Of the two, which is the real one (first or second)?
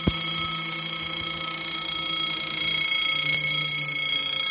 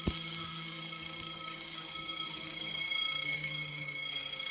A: first